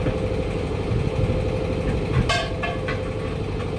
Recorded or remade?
recorded